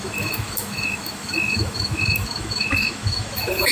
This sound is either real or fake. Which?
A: fake